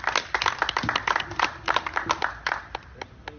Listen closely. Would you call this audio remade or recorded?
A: recorded